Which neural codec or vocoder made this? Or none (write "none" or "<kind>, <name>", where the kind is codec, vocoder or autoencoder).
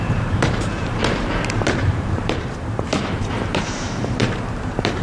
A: vocoder, BigVGAN v2